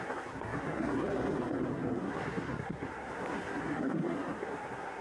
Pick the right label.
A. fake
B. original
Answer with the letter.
A